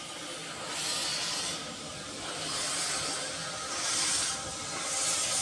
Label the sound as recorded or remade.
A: recorded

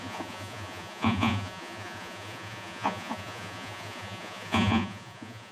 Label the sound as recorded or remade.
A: remade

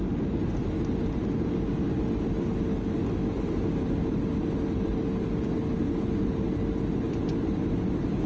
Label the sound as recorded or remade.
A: recorded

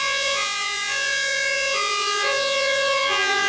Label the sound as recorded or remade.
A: remade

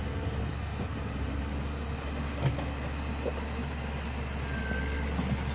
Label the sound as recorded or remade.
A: recorded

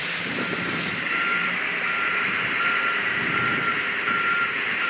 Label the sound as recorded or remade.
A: remade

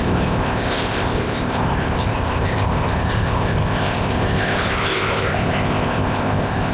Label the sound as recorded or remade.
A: remade